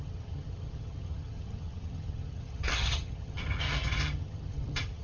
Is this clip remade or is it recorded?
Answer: remade